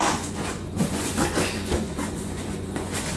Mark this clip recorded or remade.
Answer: remade